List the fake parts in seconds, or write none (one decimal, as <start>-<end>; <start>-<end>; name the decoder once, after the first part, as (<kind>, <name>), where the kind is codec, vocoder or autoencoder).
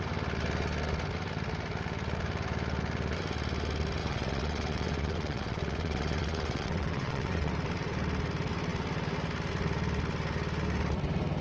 4.0-7.5 (vocoder, WaveNeXt)